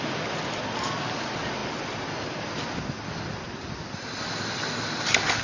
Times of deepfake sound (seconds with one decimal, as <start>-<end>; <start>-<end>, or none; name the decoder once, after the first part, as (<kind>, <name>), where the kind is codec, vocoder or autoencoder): none